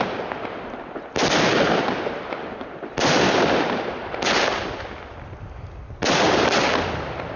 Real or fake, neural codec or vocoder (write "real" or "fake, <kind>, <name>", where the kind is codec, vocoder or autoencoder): real